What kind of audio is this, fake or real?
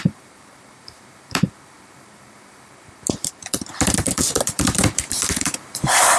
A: fake